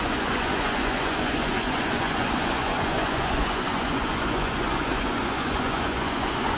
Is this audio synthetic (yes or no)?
yes